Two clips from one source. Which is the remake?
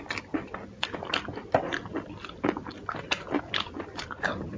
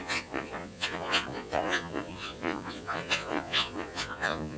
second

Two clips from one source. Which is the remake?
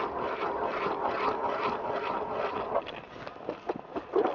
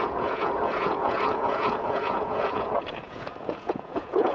second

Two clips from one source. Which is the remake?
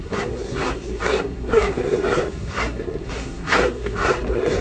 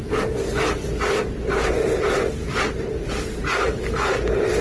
first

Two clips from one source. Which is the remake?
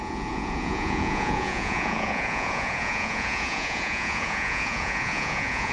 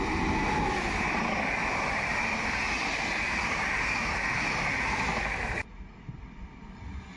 first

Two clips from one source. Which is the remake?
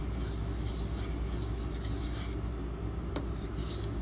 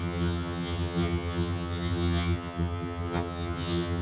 second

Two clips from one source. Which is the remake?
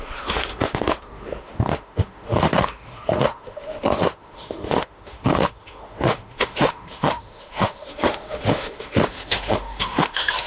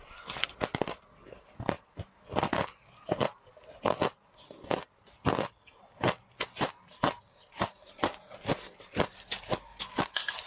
first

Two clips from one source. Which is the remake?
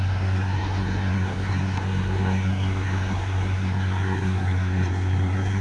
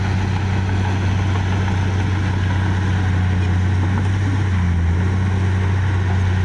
first